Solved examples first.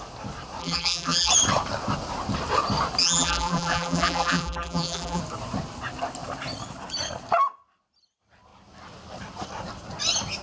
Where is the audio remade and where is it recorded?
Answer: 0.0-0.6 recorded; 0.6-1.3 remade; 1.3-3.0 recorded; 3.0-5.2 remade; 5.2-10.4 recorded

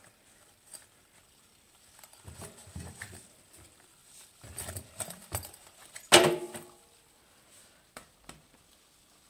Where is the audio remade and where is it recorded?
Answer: 0.0-1.2 recorded; 1.2-3.2 remade; 3.2-4.0 recorded; 4.0-6.1 remade; 6.1-9.3 recorded

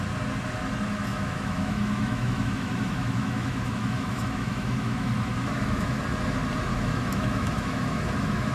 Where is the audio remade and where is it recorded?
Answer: 0.0-1.1 recorded; 1.1-6.0 remade; 6.0-6.7 recorded; 6.7-8.5 remade